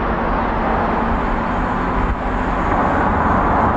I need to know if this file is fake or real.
real